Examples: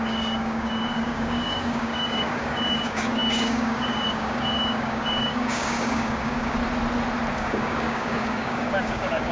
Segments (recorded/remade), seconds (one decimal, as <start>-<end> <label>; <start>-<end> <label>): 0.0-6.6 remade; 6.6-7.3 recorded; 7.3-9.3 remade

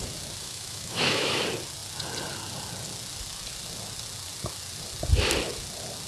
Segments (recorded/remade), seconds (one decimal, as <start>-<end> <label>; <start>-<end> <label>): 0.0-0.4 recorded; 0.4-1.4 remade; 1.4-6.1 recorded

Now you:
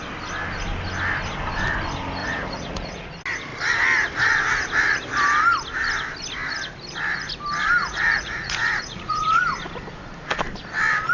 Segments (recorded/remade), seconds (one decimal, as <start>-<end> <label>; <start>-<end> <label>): 0.0-2.2 recorded; 2.2-3.1 remade; 3.1-7.8 recorded; 7.8-9.4 remade; 9.4-11.1 recorded

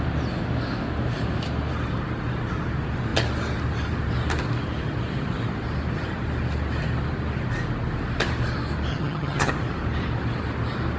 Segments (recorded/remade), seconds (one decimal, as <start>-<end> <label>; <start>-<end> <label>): 0.0-8.9 recorded; 8.9-9.5 remade; 9.5-11.0 recorded

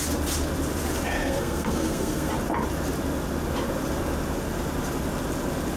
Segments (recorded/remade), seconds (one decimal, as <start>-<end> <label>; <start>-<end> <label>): 0.0-1.2 recorded; 1.2-2.3 remade; 2.3-5.8 recorded